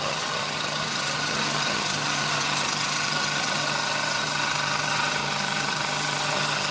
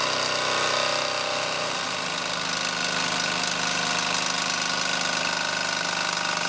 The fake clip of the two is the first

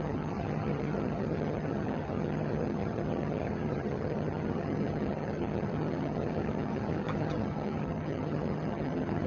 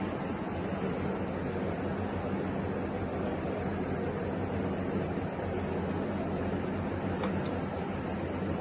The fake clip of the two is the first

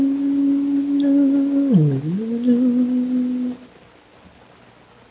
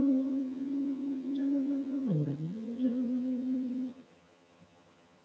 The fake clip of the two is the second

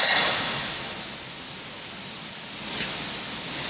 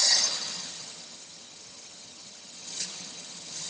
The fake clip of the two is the second